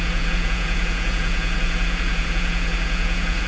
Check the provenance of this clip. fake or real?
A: fake